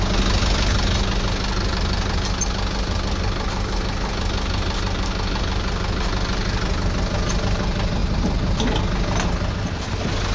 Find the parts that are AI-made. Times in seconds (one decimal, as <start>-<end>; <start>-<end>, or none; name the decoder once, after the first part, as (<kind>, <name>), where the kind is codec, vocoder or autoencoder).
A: none